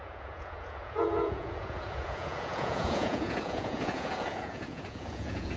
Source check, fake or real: fake